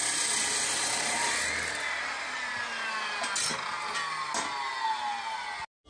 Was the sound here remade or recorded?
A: recorded